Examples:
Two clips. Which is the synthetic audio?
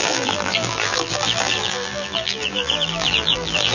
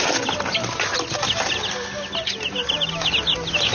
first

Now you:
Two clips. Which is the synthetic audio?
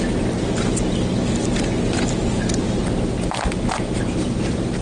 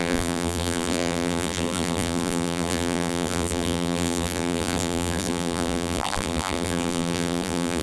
second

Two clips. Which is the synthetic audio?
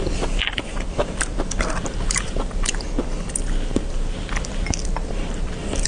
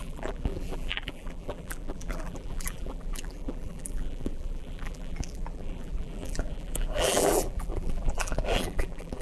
second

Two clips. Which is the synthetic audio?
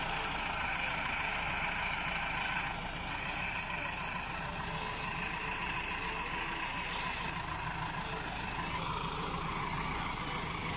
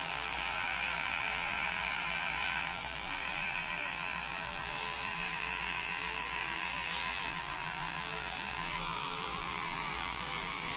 second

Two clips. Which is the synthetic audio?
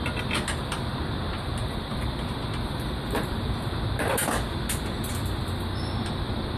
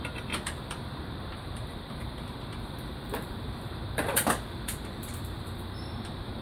second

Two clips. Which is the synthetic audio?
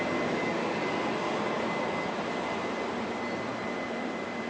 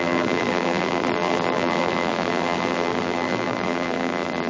second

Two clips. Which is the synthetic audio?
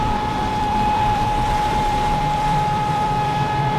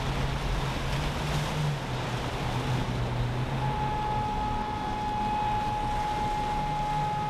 first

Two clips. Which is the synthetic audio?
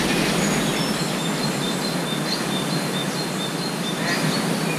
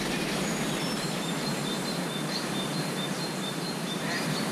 second